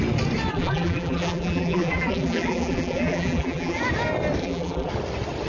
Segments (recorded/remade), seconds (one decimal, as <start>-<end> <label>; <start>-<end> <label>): 0.0-0.5 recorded; 0.5-3.8 remade; 3.8-4.4 recorded; 4.4-4.9 remade; 4.9-5.5 recorded